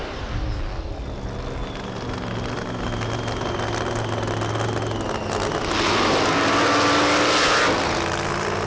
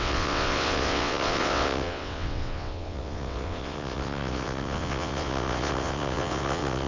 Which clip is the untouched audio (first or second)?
first